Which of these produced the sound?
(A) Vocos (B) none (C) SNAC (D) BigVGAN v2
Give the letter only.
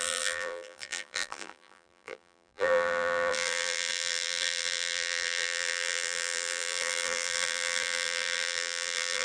D